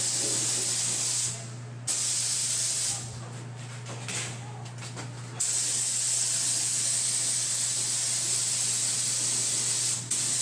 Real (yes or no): yes